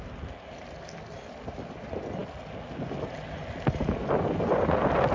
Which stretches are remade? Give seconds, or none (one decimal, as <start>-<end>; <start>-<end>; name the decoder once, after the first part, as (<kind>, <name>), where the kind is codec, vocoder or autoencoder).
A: none